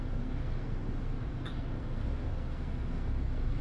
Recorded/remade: remade